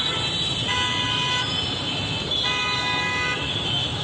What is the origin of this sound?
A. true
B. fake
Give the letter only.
B